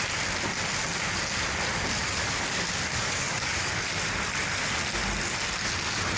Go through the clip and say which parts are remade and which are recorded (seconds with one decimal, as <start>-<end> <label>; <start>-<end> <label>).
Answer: 0.0-2.0 recorded; 2.0-3.9 remade; 3.9-6.2 recorded